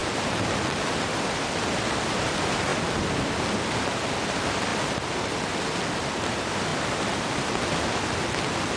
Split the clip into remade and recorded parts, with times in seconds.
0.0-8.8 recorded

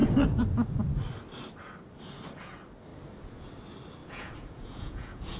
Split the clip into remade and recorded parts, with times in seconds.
0.0-4.0 recorded; 4.0-5.4 remade

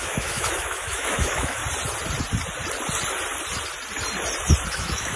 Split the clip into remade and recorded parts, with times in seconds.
0.0-1.6 remade; 1.6-4.7 recorded; 4.7-5.2 remade